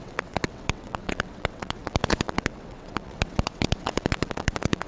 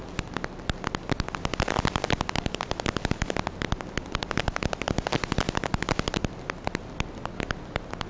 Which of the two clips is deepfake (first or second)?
first